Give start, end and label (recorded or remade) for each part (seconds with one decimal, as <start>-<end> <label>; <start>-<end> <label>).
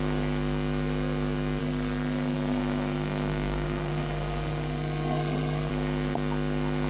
0.0-1.6 recorded; 1.6-5.7 remade; 5.7-6.9 recorded